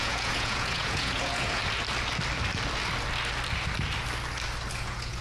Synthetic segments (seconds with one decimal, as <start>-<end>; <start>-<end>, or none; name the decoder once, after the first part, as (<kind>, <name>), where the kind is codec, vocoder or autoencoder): 0.0-1.6 (vocoder, Vocos); 4.7-5.2